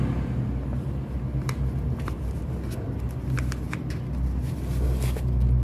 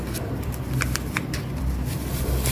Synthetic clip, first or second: second